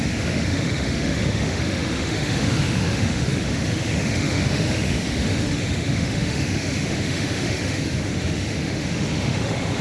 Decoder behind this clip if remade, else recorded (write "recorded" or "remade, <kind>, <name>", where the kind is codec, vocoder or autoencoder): remade, autoencoder, DAC-VAE